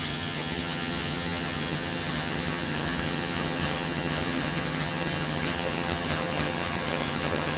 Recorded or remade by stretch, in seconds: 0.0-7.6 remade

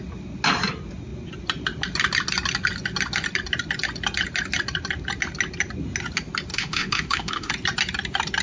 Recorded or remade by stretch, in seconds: 0.0-6.5 recorded; 6.5-7.5 remade; 7.5-8.4 recorded